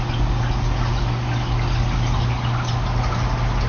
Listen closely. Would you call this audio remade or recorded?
recorded